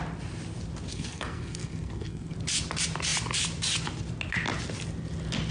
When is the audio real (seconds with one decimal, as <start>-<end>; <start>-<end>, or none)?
0.0-0.9; 2.3-5.5